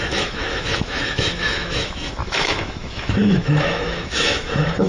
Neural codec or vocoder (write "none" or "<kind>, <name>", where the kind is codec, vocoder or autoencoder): autoencoder, DAC-VAE